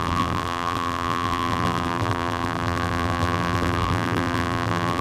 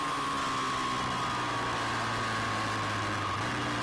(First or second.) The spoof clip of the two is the first